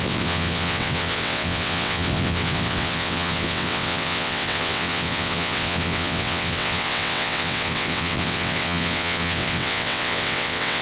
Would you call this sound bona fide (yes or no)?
no